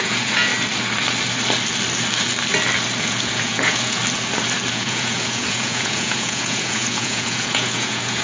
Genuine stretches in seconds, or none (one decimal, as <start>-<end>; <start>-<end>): 0.5-3.0; 4.0-4.7